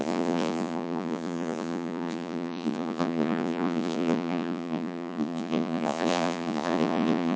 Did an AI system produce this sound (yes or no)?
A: yes